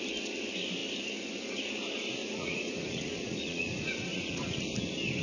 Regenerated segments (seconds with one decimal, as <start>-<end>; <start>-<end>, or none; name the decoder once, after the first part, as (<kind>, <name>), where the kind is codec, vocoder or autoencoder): 2.2-4.6 (vocoder, Vocos)